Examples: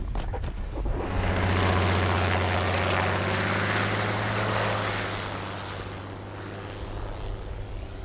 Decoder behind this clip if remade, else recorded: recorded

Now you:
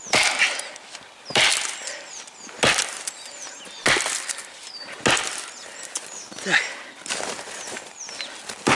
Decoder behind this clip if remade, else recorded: recorded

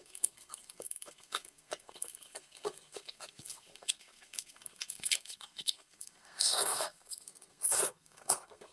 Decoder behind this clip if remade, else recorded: remade, codec, SNAC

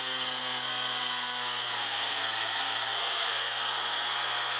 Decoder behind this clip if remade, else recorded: remade, codec, SNAC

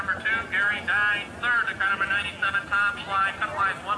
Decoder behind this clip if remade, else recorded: recorded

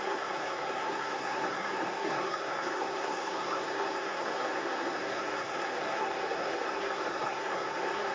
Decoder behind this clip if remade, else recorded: remade, codec, SNAC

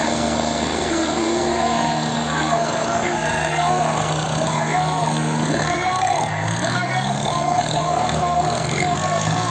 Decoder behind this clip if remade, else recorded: remade, codec, SNAC